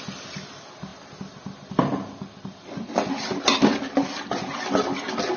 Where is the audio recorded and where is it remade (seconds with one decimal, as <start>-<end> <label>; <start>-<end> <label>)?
0.0-5.4 recorded